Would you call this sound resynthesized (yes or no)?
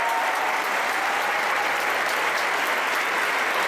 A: no